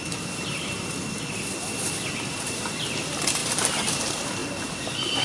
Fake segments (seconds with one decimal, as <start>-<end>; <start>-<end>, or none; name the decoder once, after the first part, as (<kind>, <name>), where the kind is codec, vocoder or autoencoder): 3.4-4.0 (vocoder, BigVGAN v2)